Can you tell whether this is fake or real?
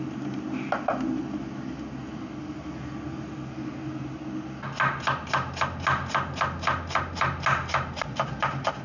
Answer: real